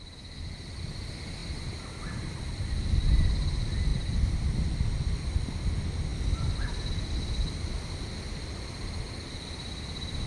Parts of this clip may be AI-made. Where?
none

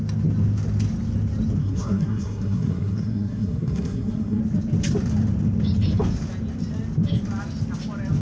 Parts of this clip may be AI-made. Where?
1.6-4.4 (codec, SNAC)

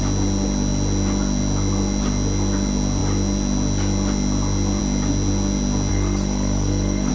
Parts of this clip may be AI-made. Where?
5.9-7.1 (codec, SNAC)

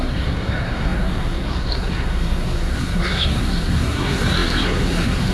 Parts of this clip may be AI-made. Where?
0.0-5.3 (codec, SNAC)

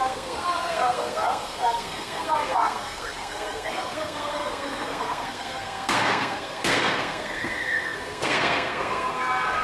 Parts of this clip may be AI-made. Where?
0.0-9.6 (codec, SNAC)